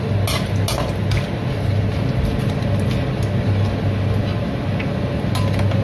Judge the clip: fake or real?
real